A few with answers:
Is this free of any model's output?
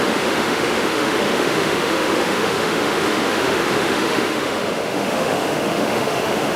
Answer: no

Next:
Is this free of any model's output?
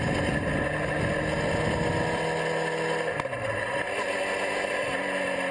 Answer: yes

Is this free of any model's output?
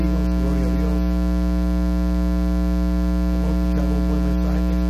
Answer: yes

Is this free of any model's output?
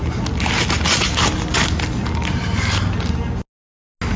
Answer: yes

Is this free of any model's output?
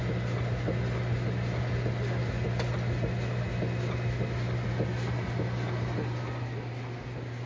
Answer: yes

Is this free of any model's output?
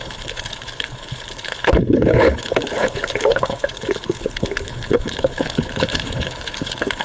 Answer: no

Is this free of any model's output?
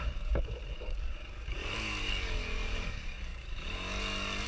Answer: no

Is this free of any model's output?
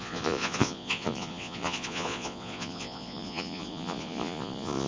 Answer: no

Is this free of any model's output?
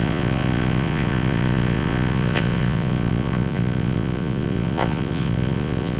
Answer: no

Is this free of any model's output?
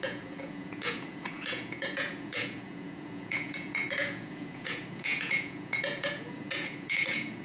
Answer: no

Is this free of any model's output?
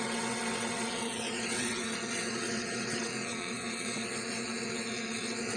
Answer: no